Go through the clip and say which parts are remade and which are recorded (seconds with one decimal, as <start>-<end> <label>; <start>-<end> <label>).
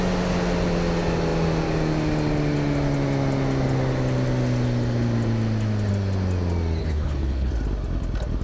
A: 0.0-6.8 recorded; 6.8-7.5 remade; 7.5-8.4 recorded